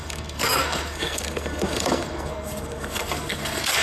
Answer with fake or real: fake